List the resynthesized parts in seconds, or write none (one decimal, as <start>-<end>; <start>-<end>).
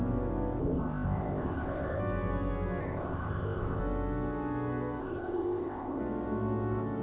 0.6-2.0; 2.8-3.8; 5.0-6.0